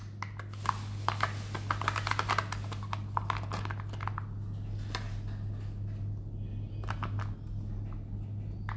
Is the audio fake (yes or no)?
no